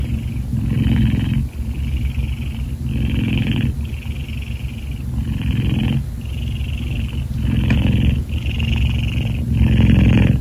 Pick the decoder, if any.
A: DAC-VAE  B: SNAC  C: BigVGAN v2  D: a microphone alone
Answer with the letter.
D